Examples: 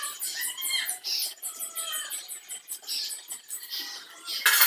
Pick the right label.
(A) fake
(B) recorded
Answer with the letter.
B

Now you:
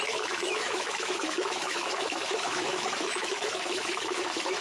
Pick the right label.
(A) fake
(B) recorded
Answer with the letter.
A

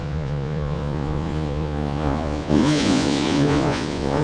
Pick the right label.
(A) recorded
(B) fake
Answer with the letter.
B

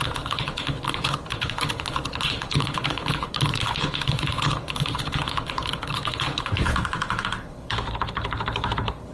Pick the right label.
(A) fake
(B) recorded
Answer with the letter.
A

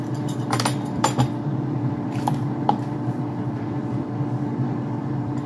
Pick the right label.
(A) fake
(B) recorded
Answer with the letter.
A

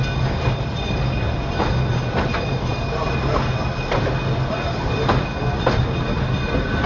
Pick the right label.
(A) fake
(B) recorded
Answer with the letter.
B